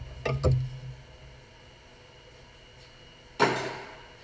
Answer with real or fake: real